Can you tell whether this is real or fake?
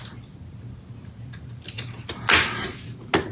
real